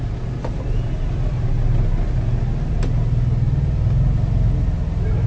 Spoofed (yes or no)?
no